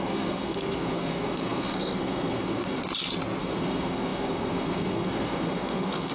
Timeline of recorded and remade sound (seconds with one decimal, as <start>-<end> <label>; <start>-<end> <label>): 0.0-2.8 remade; 2.8-3.4 recorded; 3.4-6.1 remade